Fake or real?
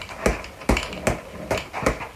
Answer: real